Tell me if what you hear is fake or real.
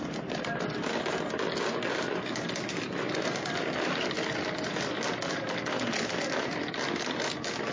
real